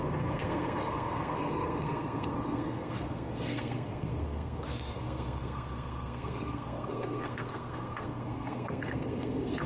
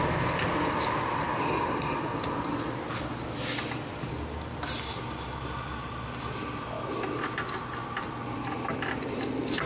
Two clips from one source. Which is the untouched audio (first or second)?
second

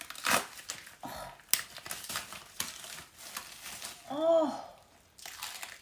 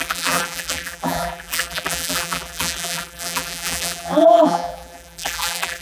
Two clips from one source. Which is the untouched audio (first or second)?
first